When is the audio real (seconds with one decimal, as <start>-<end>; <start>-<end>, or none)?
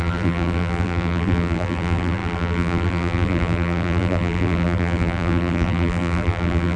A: none